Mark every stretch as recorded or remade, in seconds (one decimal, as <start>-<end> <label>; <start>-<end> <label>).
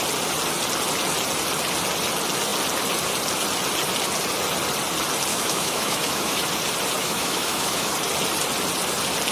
0.0-5.3 recorded; 5.3-6.4 remade; 6.4-7.0 recorded; 7.0-7.9 remade; 7.9-9.3 recorded